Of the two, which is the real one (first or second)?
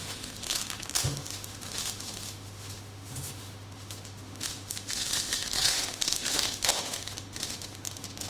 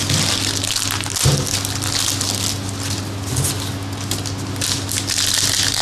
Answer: second